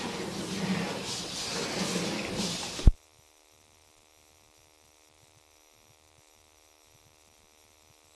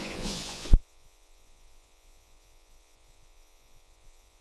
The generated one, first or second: second